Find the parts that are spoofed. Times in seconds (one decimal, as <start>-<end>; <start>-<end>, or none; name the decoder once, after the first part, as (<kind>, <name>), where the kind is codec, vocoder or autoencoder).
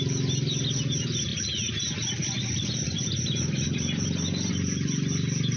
1.3-4.5 (vocoder, BigVGAN v2)